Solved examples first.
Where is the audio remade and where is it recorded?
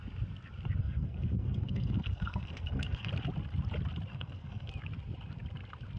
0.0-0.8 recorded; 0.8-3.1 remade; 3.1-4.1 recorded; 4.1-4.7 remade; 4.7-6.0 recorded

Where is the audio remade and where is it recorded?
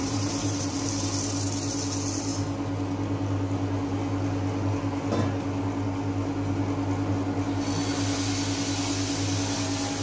0.0-0.8 remade; 0.8-10.0 recorded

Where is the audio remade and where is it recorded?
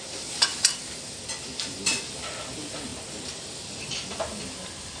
0.0-5.0 recorded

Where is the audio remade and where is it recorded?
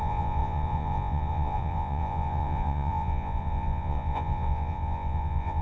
0.0-5.6 remade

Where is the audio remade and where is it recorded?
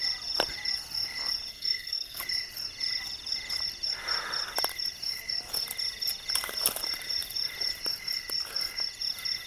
0.0-1.5 recorded; 1.5-2.2 remade; 2.2-9.5 recorded